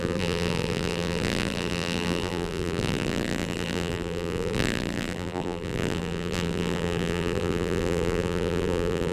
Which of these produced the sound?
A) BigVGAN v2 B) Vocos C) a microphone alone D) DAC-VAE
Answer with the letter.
A